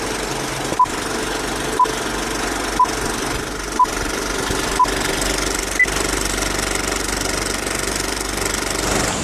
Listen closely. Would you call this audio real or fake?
real